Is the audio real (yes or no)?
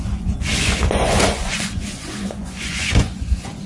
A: no